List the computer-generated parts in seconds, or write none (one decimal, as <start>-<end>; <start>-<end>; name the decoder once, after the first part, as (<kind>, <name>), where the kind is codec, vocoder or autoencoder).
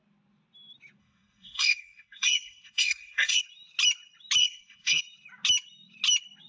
1.0-3.4 (codec, SNAC); 4.4-5.0